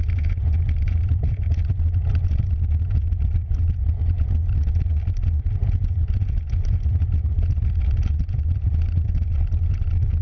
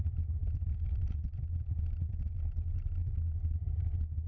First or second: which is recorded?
second